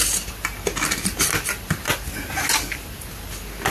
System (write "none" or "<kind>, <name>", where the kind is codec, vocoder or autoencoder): none